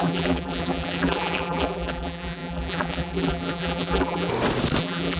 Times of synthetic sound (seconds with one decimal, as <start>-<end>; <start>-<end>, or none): 0.0-4.3; 4.8-5.2